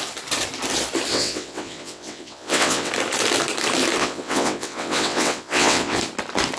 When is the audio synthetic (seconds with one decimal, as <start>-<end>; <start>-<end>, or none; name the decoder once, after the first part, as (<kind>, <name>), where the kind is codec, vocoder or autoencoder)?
1.1-2.9 (vocoder, WaveNeXt); 4.0-6.0